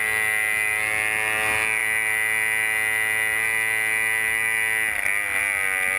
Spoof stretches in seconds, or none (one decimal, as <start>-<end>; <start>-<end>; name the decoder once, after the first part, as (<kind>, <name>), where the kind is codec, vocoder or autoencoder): none